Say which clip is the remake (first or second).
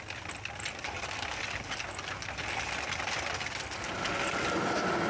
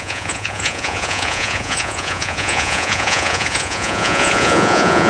second